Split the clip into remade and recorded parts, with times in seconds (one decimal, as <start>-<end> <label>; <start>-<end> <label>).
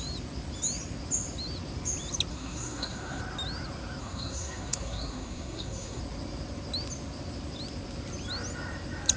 0.0-2.3 recorded; 2.3-3.2 remade; 3.2-4.0 recorded; 4.0-6.0 remade; 6.0-9.2 recorded